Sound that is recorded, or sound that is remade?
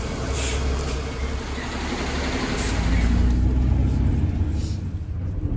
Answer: recorded